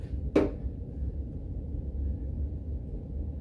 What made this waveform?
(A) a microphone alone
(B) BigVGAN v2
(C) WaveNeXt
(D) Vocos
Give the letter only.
A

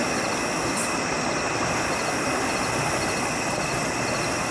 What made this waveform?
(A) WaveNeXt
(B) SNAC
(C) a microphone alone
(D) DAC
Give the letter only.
C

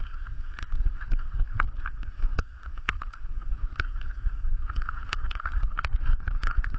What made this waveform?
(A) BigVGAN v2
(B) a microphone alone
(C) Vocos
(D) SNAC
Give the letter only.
D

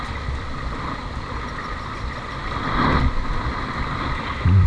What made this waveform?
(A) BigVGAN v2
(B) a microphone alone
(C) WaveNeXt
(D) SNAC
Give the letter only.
B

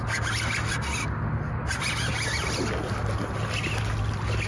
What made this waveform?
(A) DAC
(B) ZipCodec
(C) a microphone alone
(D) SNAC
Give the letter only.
C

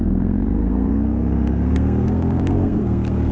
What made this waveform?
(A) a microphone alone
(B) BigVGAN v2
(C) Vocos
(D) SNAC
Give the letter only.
D